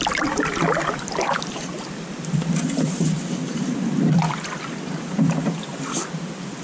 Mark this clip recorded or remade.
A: remade